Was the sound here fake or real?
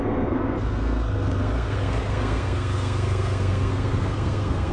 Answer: fake